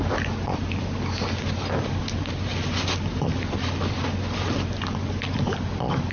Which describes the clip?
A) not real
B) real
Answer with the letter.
B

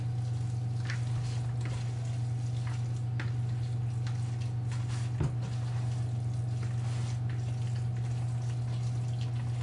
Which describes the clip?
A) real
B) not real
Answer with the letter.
A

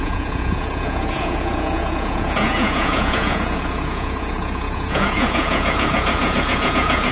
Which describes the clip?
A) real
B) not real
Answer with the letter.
B